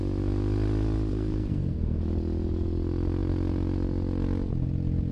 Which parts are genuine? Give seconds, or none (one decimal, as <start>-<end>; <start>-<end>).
0.0-1.1; 2.0-5.1

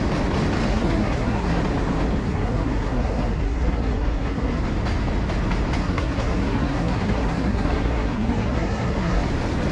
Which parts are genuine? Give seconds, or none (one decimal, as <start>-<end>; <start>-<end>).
0.0-0.7; 1.6-2.2; 4.6-5.8; 9.2-9.7